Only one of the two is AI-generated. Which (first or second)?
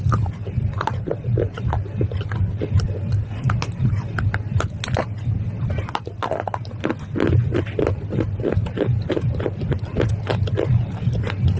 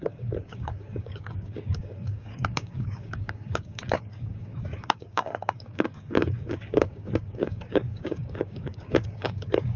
second